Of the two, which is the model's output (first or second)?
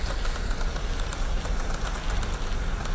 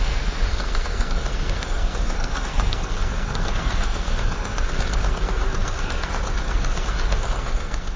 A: second